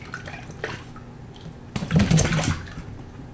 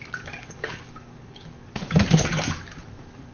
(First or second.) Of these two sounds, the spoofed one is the second